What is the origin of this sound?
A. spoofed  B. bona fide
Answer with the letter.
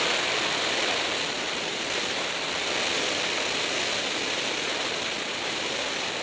B